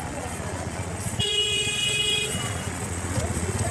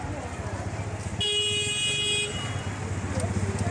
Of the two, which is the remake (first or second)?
first